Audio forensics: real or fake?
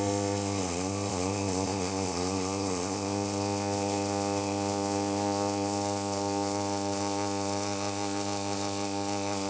fake